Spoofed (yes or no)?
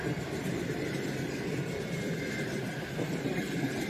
no